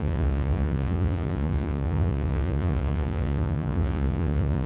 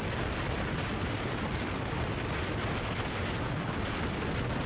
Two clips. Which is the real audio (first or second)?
second